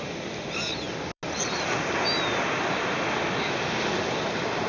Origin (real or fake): real